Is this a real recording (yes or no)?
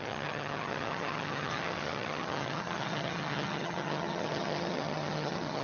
no